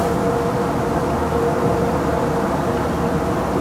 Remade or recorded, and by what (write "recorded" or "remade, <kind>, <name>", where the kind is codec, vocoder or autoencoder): recorded